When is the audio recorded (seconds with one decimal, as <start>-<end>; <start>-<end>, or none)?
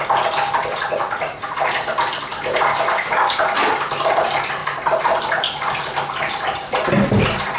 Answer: 0.0-7.6